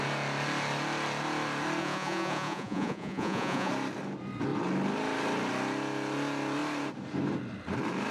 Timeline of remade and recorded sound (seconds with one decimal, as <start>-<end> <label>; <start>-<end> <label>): 0.0-1.8 recorded; 1.8-3.7 remade; 3.7-8.1 recorded